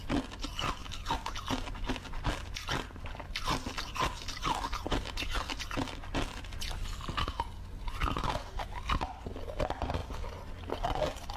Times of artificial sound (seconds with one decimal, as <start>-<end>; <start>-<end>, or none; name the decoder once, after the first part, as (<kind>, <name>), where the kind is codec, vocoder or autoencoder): none